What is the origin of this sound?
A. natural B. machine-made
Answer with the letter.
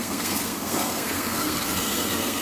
B